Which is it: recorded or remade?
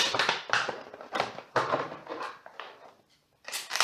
remade